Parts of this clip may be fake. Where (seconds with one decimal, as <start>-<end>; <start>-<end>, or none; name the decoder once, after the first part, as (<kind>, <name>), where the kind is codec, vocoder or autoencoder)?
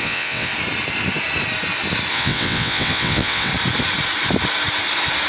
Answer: 0.0-0.5 (vocoder, WaveNeXt); 2.1-3.5